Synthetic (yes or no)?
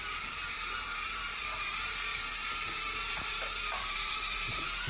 yes